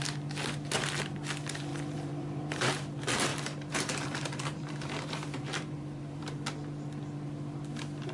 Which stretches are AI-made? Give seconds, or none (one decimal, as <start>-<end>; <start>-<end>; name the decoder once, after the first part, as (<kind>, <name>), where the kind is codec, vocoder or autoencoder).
1.7-2.7 (vocoder, BigVGAN v2); 3.3-6.2